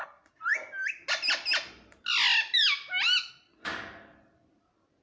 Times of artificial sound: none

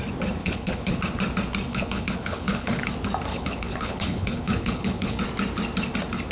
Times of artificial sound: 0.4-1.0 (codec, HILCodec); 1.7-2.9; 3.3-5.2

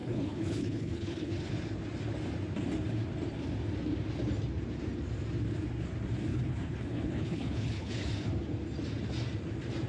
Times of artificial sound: 0.0-1.5 (codec, HILCodec); 6.3-8.3